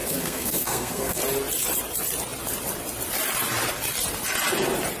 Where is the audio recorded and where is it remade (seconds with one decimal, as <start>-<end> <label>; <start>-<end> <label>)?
0.0-1.2 remade; 1.2-5.0 recorded

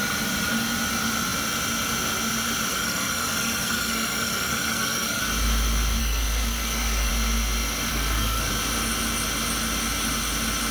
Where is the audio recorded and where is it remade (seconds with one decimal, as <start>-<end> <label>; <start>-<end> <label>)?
0.0-2.7 recorded; 2.7-5.2 remade; 5.2-6.0 recorded; 6.0-7.1 remade; 7.1-7.9 recorded; 7.9-8.5 remade; 8.5-10.7 recorded